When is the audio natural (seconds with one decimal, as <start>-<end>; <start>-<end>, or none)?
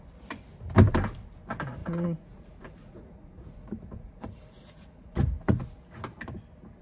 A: 0.0-1.8; 5.6-6.8